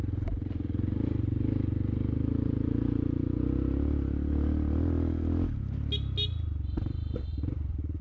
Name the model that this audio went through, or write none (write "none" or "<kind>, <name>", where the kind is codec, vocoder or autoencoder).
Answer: none